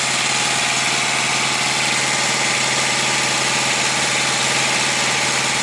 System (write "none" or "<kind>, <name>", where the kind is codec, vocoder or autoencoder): none